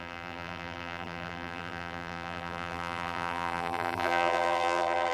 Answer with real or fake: fake